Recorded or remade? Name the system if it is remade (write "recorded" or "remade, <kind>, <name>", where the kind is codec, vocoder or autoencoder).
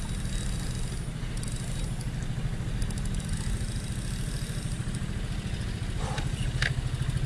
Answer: recorded